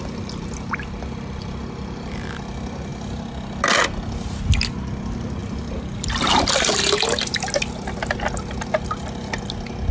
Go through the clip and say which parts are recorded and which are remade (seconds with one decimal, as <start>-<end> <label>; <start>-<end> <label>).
0.0-9.9 recorded